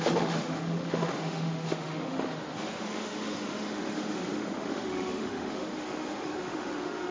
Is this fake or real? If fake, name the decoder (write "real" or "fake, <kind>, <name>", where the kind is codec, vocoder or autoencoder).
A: fake, autoencoder, DAC-VAE